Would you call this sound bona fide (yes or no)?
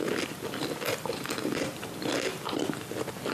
yes